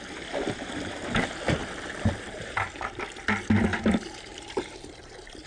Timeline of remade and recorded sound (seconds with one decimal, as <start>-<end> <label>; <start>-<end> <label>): 0.0-1.6 recorded; 1.6-3.0 remade; 3.0-3.7 recorded; 3.7-5.5 remade